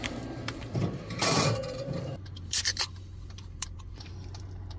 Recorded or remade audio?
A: remade